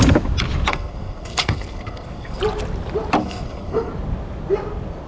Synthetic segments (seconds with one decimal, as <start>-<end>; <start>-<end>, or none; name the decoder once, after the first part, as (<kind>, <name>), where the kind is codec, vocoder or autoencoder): 0.7-2.4 (codec, SNAC); 3.2-3.9